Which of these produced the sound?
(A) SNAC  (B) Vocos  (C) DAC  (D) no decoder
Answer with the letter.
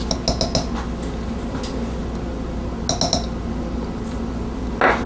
D